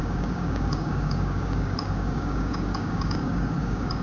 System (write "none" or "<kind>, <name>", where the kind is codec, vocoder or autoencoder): codec, DAC